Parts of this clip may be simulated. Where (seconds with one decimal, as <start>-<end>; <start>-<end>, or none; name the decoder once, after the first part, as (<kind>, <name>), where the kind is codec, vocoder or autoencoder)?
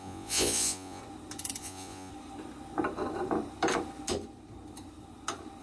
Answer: 0.0-1.0 (vocoder, Vocos); 1.6-2.1